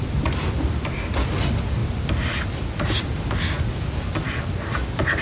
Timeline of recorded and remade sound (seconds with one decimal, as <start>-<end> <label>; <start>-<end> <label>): 0.0-5.2 recorded